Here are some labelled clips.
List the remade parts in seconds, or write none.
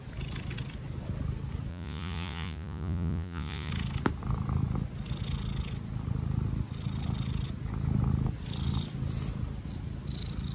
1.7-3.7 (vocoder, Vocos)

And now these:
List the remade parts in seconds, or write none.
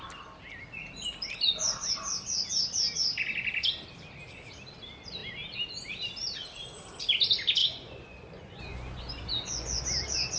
7.6-9.8 (vocoder, Vocos)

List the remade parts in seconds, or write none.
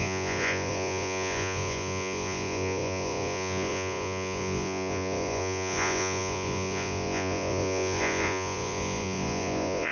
0.0-9.9 (vocoder, Vocos)